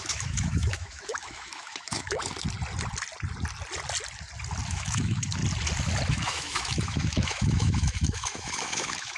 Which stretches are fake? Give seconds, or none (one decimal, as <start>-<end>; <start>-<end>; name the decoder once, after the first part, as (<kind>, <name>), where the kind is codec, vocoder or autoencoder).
0.0-2.2 (autoencoder, DAC-VAE); 4.7-5.4; 6.1-9.2